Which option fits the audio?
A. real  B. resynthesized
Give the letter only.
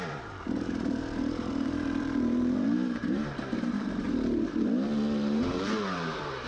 B